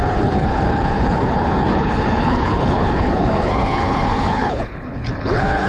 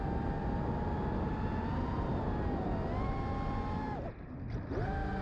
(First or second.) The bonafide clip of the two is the second